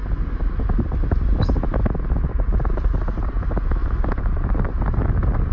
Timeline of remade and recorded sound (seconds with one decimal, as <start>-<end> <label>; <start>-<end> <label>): 0.0-3.8 recorded; 3.8-4.6 remade; 4.6-5.5 recorded